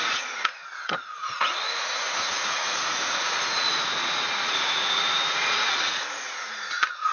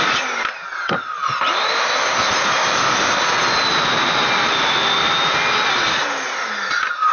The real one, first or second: second